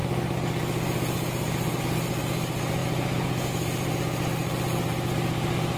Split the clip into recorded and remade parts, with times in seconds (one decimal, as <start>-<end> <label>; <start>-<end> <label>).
0.0-2.8 recorded; 2.8-3.5 remade; 3.5-5.8 recorded